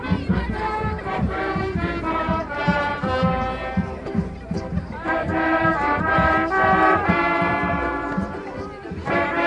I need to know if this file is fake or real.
fake